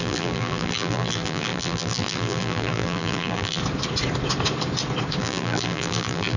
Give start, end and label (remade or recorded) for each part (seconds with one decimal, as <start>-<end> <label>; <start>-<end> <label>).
0.0-3.6 remade; 3.6-5.2 recorded; 5.2-6.4 remade